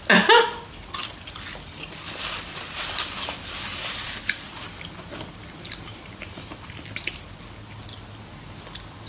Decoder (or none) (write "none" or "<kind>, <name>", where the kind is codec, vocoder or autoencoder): none